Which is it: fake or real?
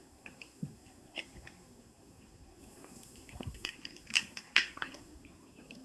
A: fake